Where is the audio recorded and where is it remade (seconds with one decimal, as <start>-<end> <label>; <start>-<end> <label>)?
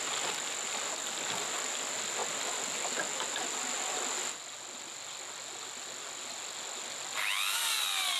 0.0-2.2 recorded; 2.2-2.8 remade; 2.8-8.2 recorded